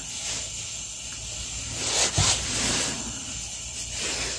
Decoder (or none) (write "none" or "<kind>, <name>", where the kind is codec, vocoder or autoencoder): none